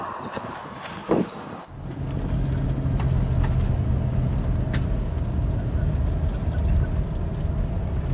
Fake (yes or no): no